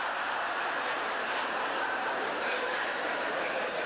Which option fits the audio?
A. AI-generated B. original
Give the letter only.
A